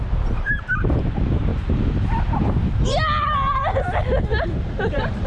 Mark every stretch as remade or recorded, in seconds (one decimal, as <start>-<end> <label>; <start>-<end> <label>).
0.0-1.5 recorded; 1.5-2.2 remade; 2.2-4.3 recorded; 4.3-5.3 remade